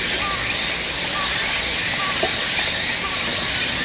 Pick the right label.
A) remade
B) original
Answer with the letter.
B